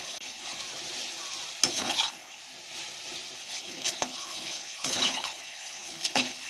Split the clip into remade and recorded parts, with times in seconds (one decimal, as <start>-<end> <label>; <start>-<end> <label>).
0.0-0.6 remade; 0.6-1.7 recorded; 1.7-2.4 remade; 2.4-3.4 recorded; 3.4-6.5 remade